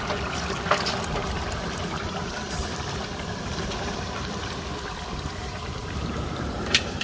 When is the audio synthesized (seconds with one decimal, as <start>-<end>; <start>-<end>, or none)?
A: 1.2-4.3; 5.4-7.0